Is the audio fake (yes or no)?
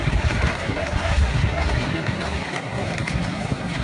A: yes